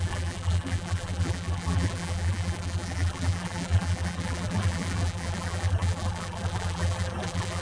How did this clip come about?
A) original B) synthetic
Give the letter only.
B